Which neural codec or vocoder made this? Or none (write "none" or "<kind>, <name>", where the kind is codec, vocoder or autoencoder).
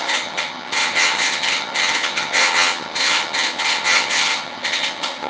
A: vocoder, HiFi-GAN